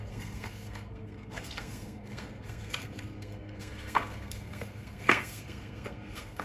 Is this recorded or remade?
remade